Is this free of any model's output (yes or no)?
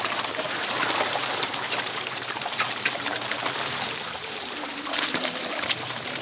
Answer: no